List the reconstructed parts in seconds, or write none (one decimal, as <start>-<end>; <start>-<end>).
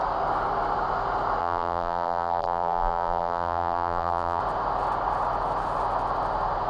1.4-4.4